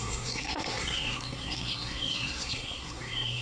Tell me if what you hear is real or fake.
fake